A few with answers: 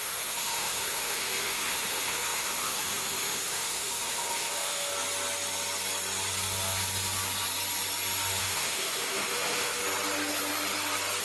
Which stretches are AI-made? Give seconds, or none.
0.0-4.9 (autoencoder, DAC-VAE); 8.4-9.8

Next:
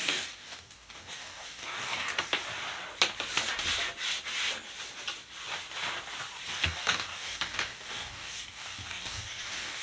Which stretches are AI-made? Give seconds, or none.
0.0-2.1 (codec, DAC); 6.5-9.8